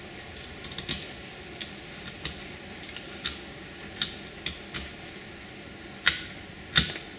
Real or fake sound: real